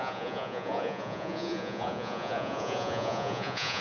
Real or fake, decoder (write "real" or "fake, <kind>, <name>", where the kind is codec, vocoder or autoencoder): fake, vocoder, Vocos